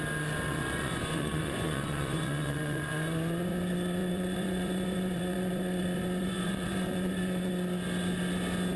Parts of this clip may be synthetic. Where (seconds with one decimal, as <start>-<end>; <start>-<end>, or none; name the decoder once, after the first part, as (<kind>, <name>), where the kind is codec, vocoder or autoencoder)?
0.5-3.5 (vocoder, Vocos); 4.0-7.5